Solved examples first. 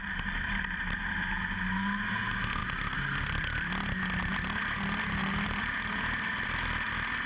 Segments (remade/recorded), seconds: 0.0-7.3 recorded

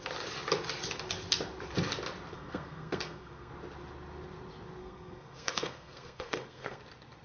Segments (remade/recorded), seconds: 0.0-2.3 recorded; 2.3-3.5 remade; 3.5-4.8 recorded; 4.8-6.8 remade; 6.8-7.2 recorded

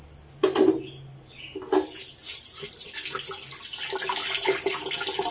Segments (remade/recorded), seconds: 0.0-5.3 recorded

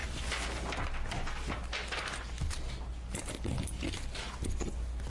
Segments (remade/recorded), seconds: 0.0-5.1 recorded

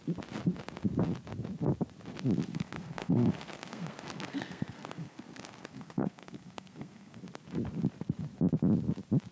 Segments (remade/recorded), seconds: 0.0-2.5 recorded; 2.5-7.2 remade; 7.2-9.3 recorded

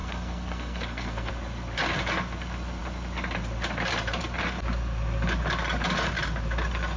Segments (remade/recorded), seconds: 0.0-1.3 remade; 1.3-7.0 recorded

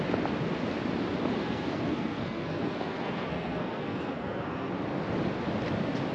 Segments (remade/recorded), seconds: 0.0-1.4 recorded; 1.4-4.7 remade; 4.7-6.1 recorded

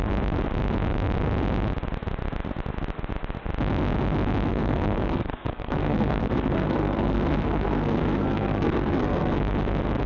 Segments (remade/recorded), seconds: 0.0-4.5 recorded; 4.5-9.4 remade; 9.4-10.1 recorded